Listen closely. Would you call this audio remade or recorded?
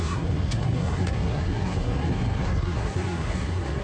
remade